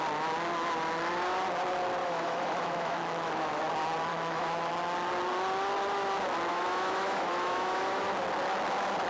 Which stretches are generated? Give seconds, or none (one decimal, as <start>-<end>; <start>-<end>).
2.0-3.6; 4.1-4.7; 6.5-8.1